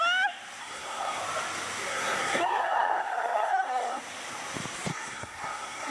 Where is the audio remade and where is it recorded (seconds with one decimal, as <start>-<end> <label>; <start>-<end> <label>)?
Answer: 0.0-0.6 recorded; 0.6-1.2 remade; 1.2-1.9 recorded; 1.9-4.0 remade; 4.0-4.9 recorded; 4.9-5.9 remade